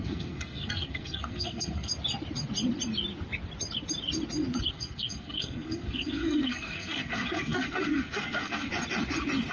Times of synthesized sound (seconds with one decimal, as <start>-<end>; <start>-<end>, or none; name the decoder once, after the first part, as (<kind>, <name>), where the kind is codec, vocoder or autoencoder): 0.0-1.9 (codec, SNAC); 4.7-8.7